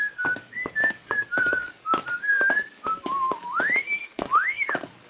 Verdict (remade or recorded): remade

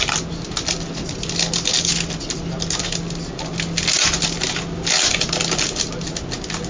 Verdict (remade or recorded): recorded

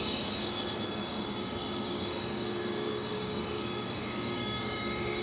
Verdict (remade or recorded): remade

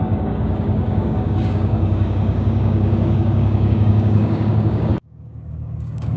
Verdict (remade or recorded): remade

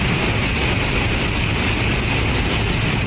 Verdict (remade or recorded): recorded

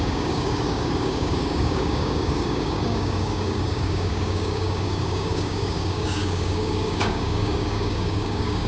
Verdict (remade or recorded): remade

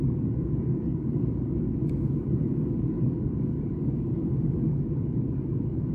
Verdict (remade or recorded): remade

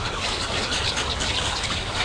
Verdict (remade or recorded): remade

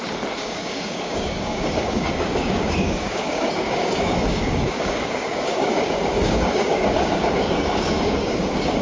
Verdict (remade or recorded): remade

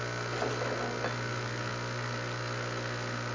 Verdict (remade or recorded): recorded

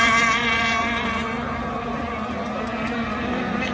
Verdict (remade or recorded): recorded